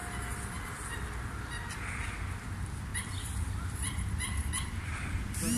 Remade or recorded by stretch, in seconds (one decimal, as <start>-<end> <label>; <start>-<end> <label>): 0.0-2.9 recorded; 2.9-5.0 remade; 5.0-5.6 recorded